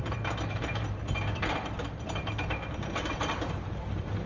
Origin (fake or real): fake